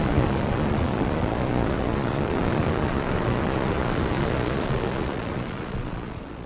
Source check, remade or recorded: remade